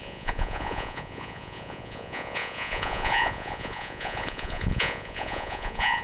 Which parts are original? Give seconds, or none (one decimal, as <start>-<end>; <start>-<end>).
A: none